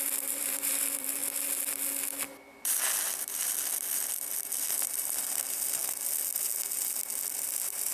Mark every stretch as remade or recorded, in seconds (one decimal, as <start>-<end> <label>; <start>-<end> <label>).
0.0-1.2 remade; 1.2-4.7 recorded; 4.7-5.8 remade; 5.8-7.3 recorded; 7.3-7.9 remade